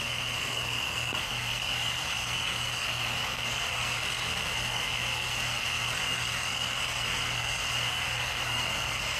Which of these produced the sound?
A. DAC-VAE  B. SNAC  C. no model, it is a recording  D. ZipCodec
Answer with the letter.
B